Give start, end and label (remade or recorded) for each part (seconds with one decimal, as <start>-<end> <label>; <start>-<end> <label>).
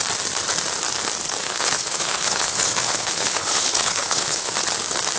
0.0-1.4 recorded; 1.4-4.5 remade; 4.5-5.2 recorded